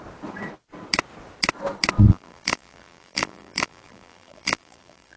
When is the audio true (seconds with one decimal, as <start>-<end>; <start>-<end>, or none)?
0.0-2.1